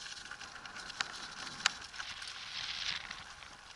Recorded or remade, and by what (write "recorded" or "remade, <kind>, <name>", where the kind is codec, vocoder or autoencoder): recorded